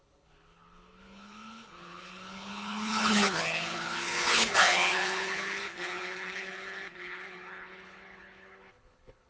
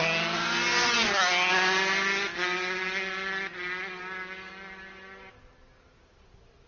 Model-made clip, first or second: first